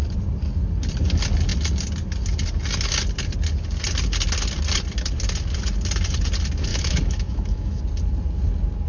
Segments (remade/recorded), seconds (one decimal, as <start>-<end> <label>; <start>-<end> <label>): 0.0-6.7 recorded; 6.7-7.8 remade; 7.8-8.9 recorded